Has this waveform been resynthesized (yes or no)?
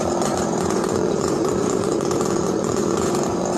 yes